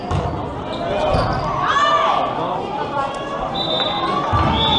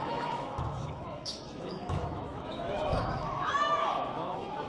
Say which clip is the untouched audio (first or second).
first